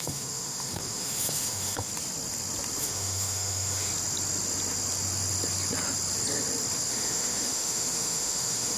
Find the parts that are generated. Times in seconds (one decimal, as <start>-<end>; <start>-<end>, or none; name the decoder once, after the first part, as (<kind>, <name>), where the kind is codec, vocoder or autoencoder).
0.0-1.9 (autoencoder, DAC-VAE); 2.8-3.9; 6.9-8.8